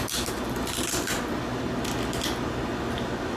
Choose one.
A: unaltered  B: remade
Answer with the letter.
A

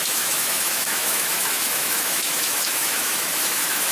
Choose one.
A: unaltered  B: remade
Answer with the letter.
B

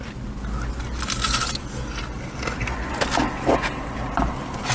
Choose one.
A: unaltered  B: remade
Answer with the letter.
A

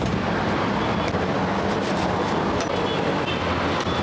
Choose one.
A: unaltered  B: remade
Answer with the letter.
A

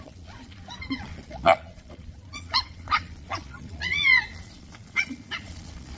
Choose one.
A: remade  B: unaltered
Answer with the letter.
A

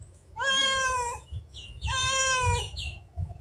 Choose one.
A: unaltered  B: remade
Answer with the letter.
B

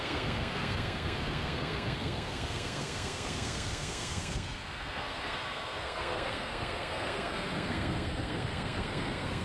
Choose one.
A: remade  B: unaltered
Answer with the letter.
A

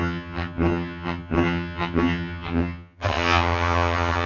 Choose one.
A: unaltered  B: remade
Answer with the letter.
B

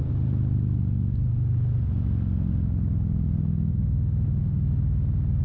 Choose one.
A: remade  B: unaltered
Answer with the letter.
B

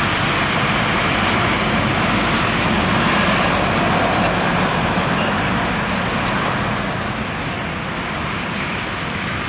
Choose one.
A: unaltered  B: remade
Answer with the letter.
A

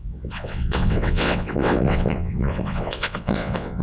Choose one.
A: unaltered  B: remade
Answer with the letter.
B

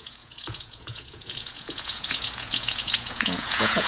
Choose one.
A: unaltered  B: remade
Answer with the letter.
B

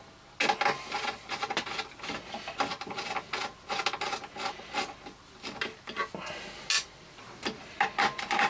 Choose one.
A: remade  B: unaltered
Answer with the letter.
B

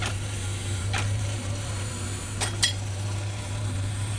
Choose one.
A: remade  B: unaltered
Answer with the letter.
A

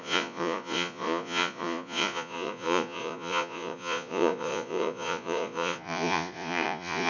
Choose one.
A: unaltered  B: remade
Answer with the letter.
B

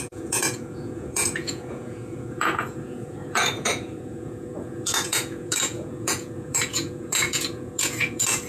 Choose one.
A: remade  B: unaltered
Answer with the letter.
A